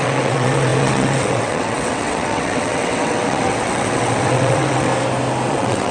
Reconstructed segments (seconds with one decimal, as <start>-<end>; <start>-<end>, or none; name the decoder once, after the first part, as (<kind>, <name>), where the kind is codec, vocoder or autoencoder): 0.0-4.9 (vocoder, WaveNeXt); 5.5-5.9